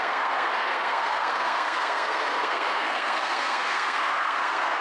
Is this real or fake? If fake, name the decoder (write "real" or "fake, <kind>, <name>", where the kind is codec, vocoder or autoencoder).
fake, codec, SNAC